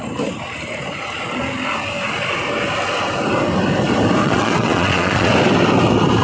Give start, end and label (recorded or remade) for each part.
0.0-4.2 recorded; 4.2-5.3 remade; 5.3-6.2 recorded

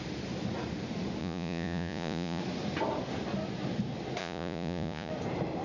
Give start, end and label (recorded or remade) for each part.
0.0-1.2 recorded; 1.2-2.4 remade; 2.4-4.2 recorded; 4.2-5.1 remade; 5.1-5.6 recorded

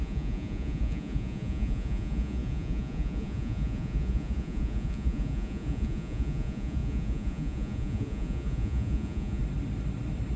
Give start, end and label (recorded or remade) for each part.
0.0-9.4 remade; 9.4-10.4 recorded

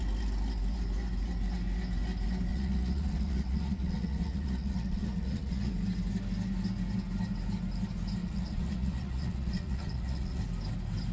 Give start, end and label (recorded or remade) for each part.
0.0-2.5 recorded; 2.5-5.7 remade; 5.7-8.2 recorded; 8.2-10.4 remade; 10.4-11.1 recorded

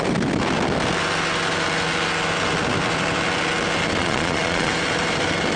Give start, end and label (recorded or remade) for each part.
0.0-4.0 recorded; 4.0-4.7 remade; 4.7-5.6 recorded

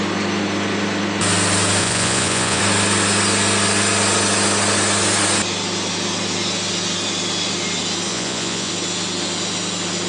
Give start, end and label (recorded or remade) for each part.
0.0-1.8 recorded; 1.8-2.6 remade; 2.6-8.1 recorded; 8.1-8.7 remade; 8.7-10.1 recorded